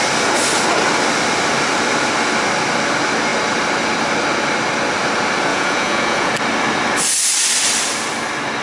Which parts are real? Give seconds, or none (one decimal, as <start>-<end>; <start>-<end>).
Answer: 0.0-5.5; 6.3-8.6